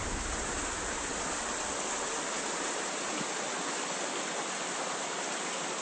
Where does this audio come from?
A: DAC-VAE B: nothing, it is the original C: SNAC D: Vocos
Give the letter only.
B